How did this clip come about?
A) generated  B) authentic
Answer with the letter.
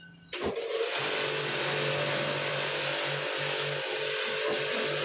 B